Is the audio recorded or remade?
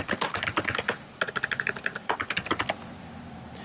recorded